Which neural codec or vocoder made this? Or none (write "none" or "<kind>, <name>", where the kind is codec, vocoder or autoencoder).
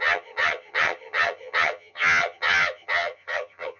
vocoder, HiFi-GAN